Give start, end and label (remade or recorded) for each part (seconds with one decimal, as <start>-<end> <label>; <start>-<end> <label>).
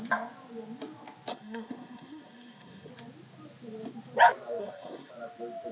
0.0-1.3 recorded; 1.3-2.9 remade; 2.9-4.6 recorded; 4.6-5.1 remade; 5.1-5.7 recorded